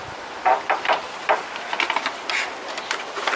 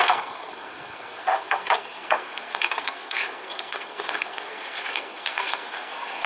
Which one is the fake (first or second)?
second